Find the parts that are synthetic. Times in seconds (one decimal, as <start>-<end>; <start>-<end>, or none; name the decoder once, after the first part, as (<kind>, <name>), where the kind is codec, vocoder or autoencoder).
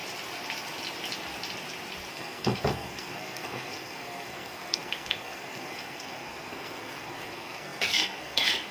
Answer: 2.1-8.7 (codec, SNAC)